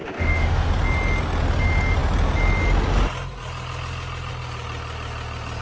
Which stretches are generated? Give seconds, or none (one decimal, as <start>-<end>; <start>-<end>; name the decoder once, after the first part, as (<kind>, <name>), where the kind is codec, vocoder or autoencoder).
0.0-0.7 (autoencoder, DAC-VAE)